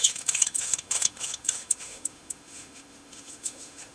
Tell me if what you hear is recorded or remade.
remade